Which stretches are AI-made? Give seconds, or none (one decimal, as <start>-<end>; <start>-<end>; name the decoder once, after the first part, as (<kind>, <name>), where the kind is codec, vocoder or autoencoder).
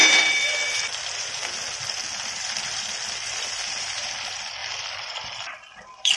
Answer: 0.0-6.2 (vocoder, BigVGAN v2)